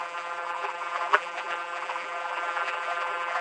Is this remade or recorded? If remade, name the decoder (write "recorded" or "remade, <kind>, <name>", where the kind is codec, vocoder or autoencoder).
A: remade, vocoder, BigVGAN v2